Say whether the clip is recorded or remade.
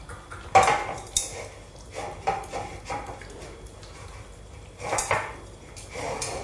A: recorded